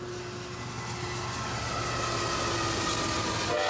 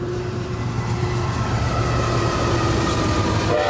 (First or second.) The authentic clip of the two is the first